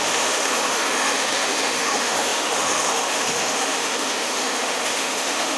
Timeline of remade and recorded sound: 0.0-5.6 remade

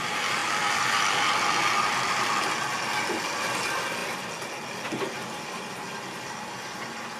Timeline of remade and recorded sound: 0.0-7.2 recorded